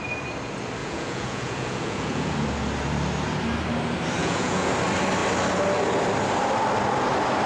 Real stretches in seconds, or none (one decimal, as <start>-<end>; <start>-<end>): 0.0-0.8; 2.3-4.2; 4.7-7.5